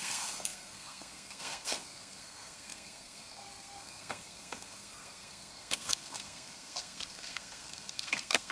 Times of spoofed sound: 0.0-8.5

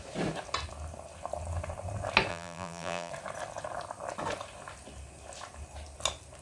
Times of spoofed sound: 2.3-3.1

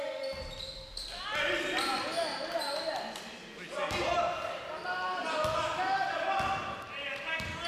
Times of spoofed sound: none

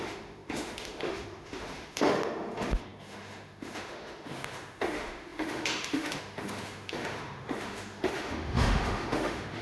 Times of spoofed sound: 0.0-9.6

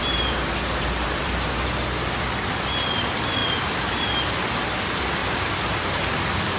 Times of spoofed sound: 0.0-1.5; 5.2-6.0